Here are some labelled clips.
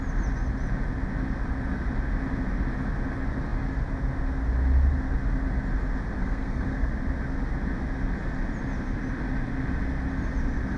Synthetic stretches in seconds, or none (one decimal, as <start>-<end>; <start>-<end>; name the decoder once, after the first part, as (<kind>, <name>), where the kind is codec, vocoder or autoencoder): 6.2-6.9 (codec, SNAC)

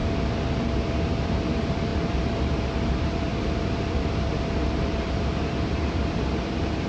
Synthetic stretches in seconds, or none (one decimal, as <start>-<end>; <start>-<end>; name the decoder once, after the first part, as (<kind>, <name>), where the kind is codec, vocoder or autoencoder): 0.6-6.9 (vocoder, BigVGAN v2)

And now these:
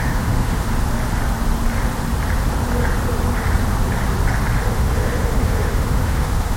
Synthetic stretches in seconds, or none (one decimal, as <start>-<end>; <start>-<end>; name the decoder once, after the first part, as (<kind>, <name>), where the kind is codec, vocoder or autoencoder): 0.0-0.7 (autoencoder, DAC-VAE); 4.7-6.6